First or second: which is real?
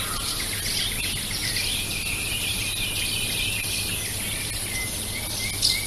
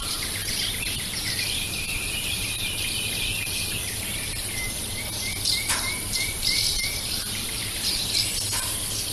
first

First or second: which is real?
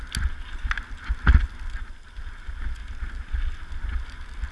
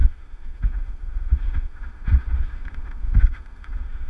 first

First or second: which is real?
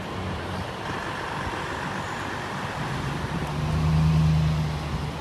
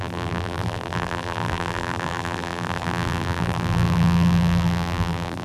first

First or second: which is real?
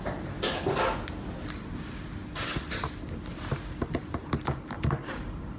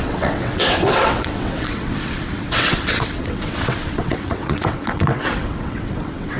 first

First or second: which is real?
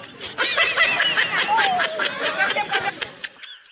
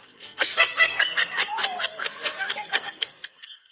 first